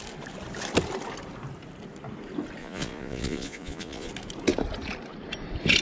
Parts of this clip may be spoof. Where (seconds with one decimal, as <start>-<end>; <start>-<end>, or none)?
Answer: 2.6-4.1